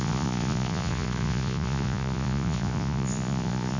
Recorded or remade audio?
remade